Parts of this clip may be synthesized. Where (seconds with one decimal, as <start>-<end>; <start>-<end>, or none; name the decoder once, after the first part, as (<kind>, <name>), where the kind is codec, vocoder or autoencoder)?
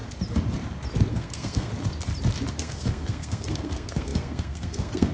1.1-1.7 (codec, SNAC); 2.5-5.1